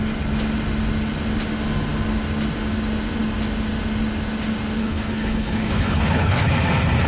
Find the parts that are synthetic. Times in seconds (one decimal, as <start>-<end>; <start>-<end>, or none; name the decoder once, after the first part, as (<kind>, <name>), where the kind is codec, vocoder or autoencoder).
4.8-6.5 (codec, HILCodec)